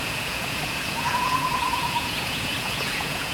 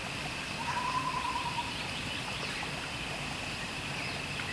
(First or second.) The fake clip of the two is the first